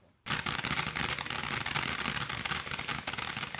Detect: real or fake real